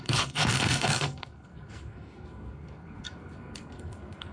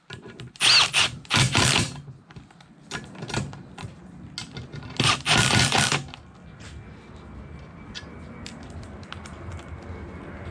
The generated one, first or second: first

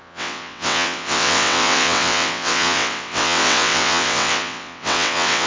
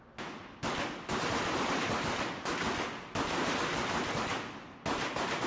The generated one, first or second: first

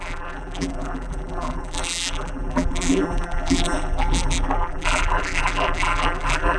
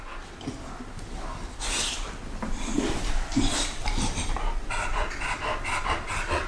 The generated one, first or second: first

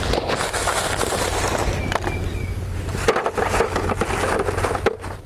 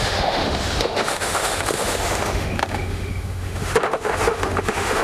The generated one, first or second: second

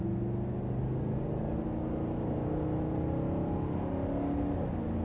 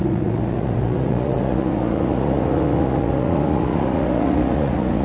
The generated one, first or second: second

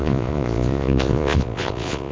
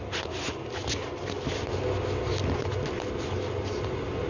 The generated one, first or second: first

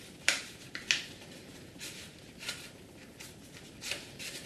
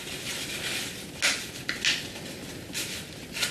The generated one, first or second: first